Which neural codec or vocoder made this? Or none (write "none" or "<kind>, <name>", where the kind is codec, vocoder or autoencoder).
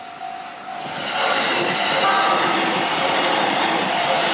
none